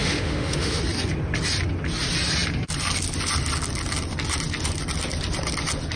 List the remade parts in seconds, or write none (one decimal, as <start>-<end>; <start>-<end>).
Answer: 0.0-0.8